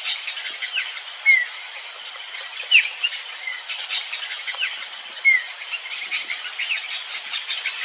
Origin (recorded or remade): recorded